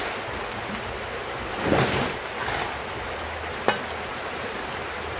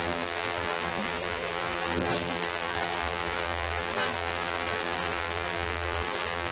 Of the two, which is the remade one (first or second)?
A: second